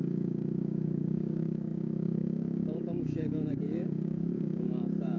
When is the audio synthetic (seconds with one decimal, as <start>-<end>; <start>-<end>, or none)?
0.0-5.2